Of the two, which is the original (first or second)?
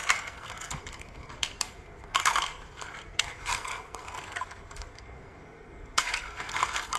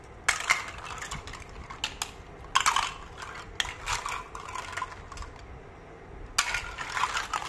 second